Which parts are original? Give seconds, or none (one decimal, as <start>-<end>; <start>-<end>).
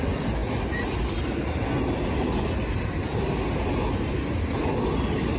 0.0-5.4